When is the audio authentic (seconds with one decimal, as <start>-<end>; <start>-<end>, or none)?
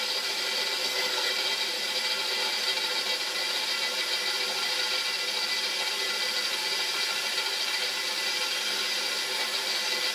0.0-0.8; 1.3-10.1